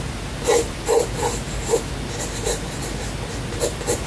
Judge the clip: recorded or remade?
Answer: recorded